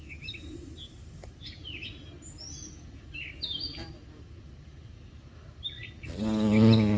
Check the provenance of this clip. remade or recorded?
recorded